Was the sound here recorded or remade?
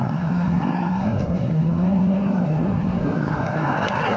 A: remade